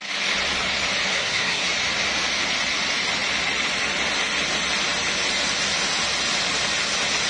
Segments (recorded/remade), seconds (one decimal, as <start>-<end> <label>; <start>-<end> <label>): 0.0-1.1 recorded; 1.1-1.7 remade; 1.7-7.3 recorded